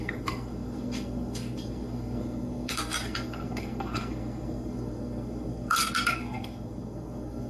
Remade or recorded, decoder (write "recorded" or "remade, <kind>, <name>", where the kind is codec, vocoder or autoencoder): remade, codec, SNAC